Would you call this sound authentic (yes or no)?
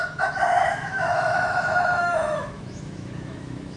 no